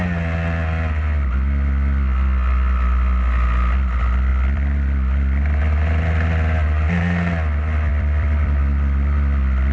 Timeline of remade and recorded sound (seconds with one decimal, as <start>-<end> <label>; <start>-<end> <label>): 0.0-4.3 recorded; 4.3-5.6 remade; 5.6-7.9 recorded; 7.9-8.6 remade; 8.6-9.7 recorded

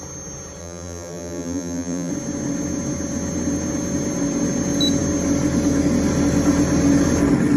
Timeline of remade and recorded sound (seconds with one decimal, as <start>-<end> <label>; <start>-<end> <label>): 0.0-0.6 recorded; 0.6-2.1 remade; 2.1-7.6 recorded

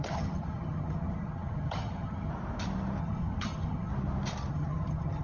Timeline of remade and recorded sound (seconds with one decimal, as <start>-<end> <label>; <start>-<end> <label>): 0.0-2.3 remade; 2.3-3.0 recorded; 3.0-3.9 remade; 3.9-4.5 recorded; 4.5-5.2 remade

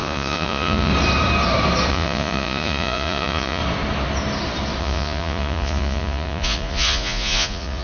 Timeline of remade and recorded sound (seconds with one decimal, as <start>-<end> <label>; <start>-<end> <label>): 0.0-0.9 remade; 0.9-1.9 recorded; 1.9-3.6 remade; 3.6-4.8 recorded; 4.8-7.8 remade

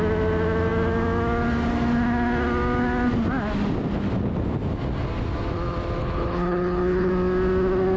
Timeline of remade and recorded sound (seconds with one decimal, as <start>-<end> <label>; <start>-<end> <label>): 0.0-6.0 recorded; 6.0-7.1 remade; 7.1-8.0 recorded